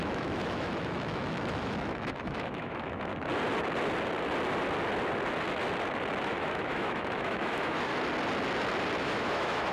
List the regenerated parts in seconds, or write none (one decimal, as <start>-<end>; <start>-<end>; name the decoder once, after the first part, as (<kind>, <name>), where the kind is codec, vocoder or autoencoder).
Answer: 0.0-3.1 (autoencoder, DAC-VAE); 6.2-7.9; 9.0-9.7

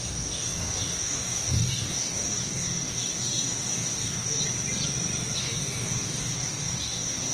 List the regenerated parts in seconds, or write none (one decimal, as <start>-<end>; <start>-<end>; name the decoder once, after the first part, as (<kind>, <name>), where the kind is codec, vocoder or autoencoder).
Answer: 0.0-4.4 (codec, DAC); 5.4-7.3

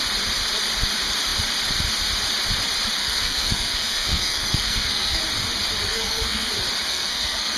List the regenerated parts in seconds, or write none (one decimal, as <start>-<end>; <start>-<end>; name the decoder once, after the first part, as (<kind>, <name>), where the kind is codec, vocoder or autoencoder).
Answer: 3.0-5.2 (codec, SNAC); 5.8-6.5; 6.9-7.6

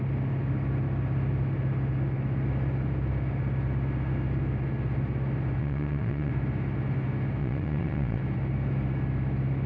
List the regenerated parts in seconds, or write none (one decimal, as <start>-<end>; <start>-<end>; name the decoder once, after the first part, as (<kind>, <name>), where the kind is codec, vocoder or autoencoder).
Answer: 5.6-6.3 (vocoder, Vocos); 7.4-8.2